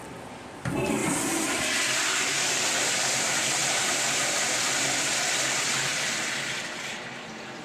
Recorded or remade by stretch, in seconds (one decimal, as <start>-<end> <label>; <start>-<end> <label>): 0.0-1.0 recorded; 1.0-2.4 remade; 2.4-3.6 recorded; 3.6-5.1 remade; 5.1-5.9 recorded; 5.9-7.0 remade; 7.0-7.6 recorded